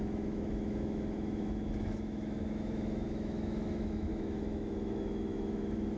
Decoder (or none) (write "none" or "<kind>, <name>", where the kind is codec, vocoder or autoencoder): autoencoder, DAC-VAE